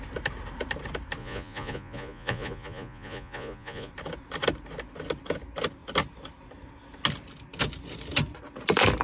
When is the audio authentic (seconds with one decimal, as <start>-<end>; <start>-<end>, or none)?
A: 0.0-1.2; 3.9-9.0